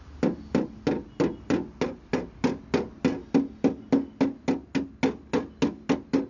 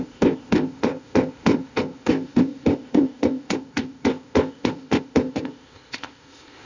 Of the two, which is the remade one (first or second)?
second